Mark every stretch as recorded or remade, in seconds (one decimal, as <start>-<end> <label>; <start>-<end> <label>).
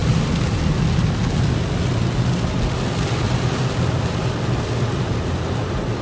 0.0-6.0 recorded